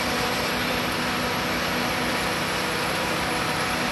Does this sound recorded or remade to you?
recorded